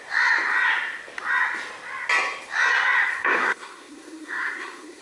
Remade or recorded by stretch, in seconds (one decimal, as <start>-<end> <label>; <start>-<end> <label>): 0.0-3.1 recorded; 3.1-5.0 remade